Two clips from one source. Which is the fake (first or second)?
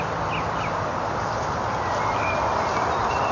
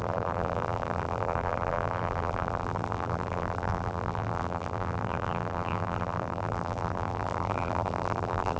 second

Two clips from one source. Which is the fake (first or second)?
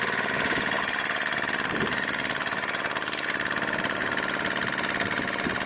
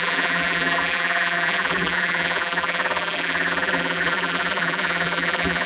second